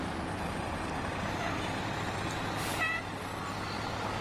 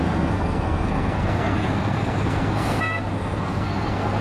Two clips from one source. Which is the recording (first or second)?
first